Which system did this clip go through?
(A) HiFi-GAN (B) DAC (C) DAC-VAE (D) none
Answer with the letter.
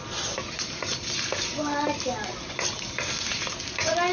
D